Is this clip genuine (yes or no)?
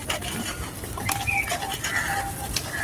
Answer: yes